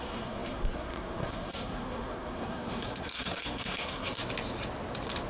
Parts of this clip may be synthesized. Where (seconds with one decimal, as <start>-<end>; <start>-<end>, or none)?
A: 0.0-4.2